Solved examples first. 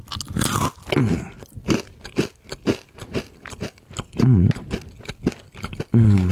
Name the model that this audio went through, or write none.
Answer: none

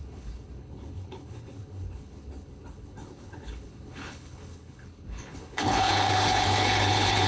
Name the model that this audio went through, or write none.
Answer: codec, HILCodec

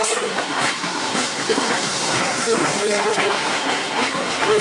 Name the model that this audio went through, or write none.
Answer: codec, SNAC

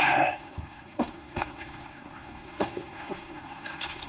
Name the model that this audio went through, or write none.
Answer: codec, SNAC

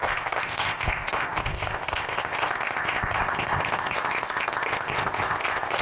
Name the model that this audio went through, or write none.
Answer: codec, ZipCodec